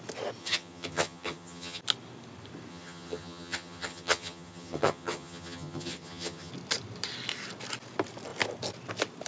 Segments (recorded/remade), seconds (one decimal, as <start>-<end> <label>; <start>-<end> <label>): 0.0-0.4 recorded; 0.4-1.8 remade; 1.8-2.7 recorded; 2.7-6.5 remade; 6.5-9.3 recorded